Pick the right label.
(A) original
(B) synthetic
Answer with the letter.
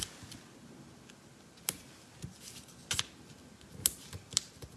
A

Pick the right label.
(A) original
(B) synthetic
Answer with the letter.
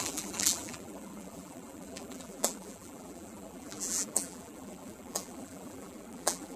B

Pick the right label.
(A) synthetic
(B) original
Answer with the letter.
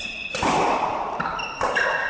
B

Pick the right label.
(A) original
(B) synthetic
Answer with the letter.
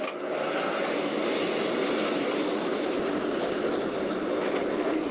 A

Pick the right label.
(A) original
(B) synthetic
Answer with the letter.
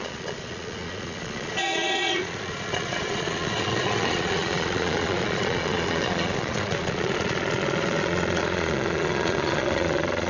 B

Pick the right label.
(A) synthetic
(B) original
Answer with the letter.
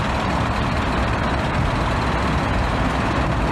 B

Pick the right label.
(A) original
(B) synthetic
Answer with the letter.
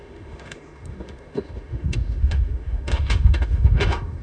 B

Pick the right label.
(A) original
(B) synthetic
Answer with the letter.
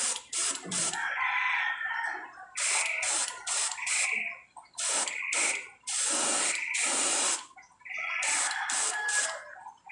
A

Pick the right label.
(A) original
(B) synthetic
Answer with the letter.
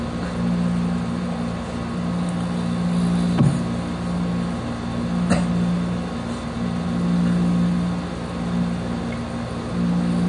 A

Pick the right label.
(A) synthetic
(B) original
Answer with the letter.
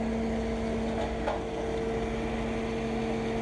B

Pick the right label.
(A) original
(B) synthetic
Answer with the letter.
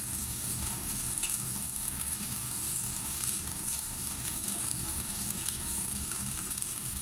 B